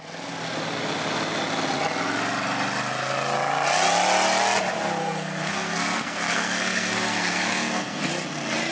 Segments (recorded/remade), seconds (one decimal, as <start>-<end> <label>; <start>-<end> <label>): 0.0-5.0 recorded; 5.0-8.1 remade; 8.1-8.7 recorded